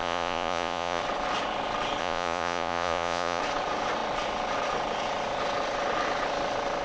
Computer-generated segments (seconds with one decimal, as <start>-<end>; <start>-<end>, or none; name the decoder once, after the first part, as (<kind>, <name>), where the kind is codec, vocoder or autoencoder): 0.0-1.0 (vocoder, Vocos); 2.0-3.4